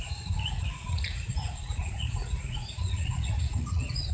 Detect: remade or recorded remade